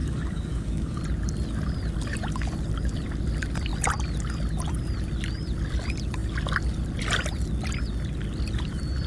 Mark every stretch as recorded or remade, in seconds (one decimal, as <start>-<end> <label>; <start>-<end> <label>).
0.0-1.0 remade; 1.0-9.1 recorded